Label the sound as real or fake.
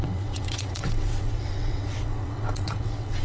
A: fake